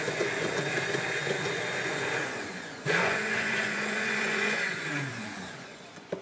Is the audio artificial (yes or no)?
yes